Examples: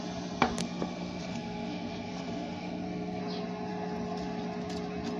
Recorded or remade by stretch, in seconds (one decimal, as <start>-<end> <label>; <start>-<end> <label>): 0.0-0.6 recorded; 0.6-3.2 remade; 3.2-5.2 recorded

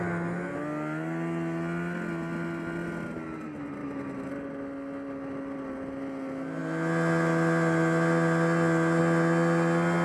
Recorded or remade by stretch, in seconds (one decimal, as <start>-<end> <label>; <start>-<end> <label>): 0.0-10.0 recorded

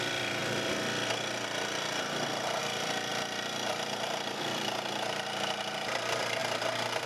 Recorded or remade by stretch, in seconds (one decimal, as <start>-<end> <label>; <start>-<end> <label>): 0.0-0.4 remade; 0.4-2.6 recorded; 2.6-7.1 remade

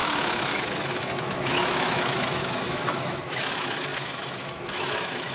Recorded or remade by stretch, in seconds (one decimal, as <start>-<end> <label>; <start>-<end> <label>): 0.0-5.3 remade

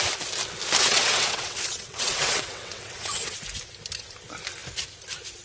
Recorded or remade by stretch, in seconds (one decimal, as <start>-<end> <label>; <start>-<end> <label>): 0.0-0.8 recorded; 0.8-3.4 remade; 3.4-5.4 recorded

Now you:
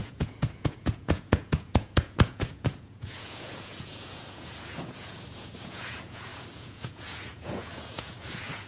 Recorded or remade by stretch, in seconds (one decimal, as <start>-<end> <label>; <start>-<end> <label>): 0.0-8.7 remade

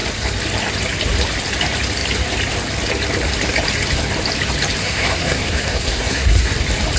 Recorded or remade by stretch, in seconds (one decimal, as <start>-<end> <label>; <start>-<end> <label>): 0.0-4.8 recorded; 4.8-6.5 remade; 6.5-7.0 recorded